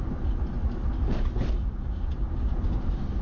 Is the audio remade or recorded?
recorded